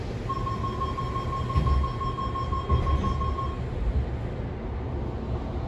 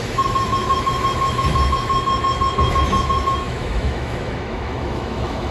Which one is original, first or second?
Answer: first